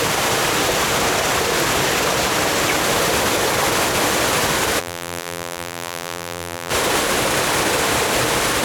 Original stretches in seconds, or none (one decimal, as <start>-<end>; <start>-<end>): 0.0-4.8; 6.7-8.6